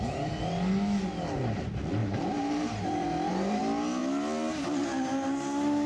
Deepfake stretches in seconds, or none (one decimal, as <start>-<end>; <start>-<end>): 2.0-3.6